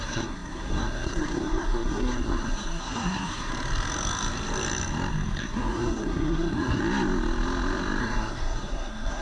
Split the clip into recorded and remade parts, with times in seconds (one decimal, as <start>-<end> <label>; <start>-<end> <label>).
0.0-3.5 remade; 3.5-5.4 recorded; 5.4-6.8 remade; 6.8-8.0 recorded; 8.0-9.2 remade